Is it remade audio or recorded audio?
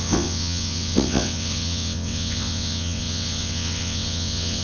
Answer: remade